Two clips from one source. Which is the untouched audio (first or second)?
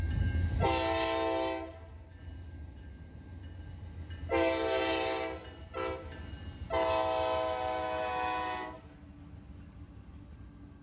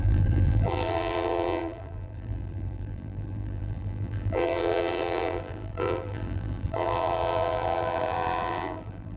first